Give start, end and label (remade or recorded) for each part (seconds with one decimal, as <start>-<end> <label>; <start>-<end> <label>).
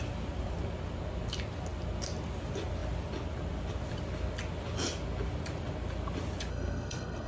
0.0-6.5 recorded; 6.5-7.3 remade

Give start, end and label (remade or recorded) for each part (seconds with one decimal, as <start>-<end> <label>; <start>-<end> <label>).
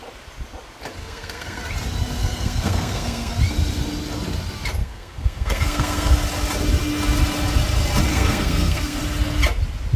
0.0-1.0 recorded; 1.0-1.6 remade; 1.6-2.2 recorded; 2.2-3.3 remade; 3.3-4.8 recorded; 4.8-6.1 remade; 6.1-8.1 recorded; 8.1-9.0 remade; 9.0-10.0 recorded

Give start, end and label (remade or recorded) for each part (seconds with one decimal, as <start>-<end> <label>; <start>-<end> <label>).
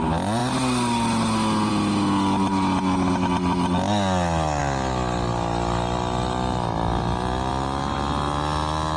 0.0-9.0 recorded